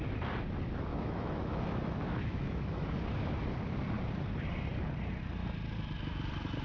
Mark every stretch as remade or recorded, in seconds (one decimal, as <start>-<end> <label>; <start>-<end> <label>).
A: 0.0-0.9 recorded; 0.9-3.0 remade; 3.0-6.6 recorded